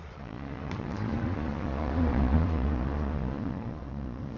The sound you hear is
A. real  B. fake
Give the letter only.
B